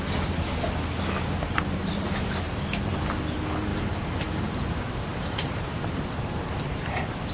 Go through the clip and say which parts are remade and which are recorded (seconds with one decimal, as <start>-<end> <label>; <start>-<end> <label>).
0.0-1.8 recorded; 1.8-2.5 remade; 2.5-3.7 recorded; 3.7-4.4 remade; 4.4-5.1 recorded; 5.1-6.0 remade; 6.0-7.3 recorded